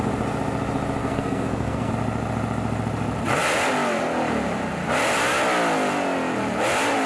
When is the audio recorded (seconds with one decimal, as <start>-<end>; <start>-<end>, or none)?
0.0-1.0; 1.9-7.1